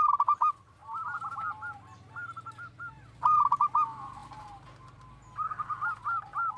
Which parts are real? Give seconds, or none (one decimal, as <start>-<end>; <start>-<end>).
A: 0.0-6.6